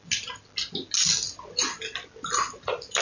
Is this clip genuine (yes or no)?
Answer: yes